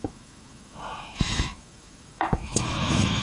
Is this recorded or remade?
remade